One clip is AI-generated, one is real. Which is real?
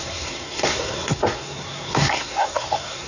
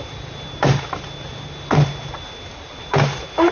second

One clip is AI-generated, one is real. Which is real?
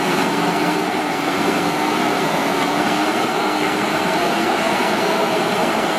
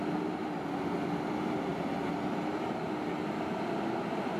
second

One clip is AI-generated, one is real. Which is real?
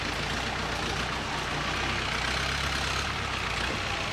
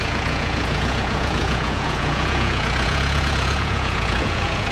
first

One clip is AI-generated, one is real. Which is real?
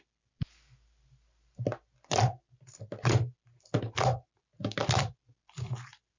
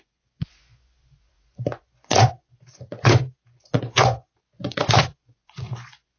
first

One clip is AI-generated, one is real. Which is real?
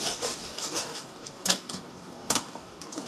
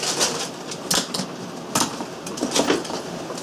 second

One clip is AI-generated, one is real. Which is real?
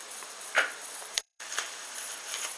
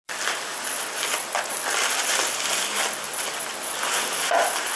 second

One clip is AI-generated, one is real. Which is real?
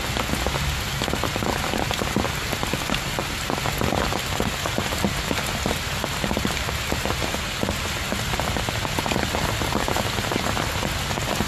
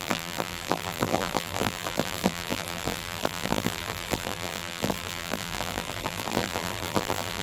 first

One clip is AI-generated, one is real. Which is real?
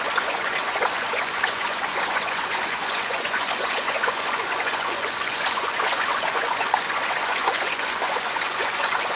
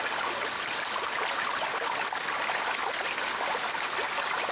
second